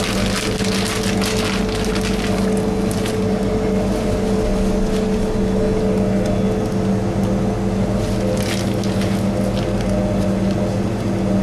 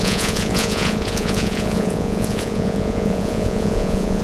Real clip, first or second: first